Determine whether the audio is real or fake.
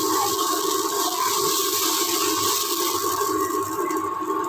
real